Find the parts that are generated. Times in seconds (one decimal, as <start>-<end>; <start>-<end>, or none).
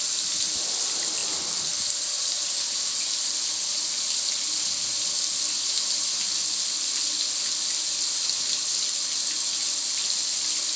none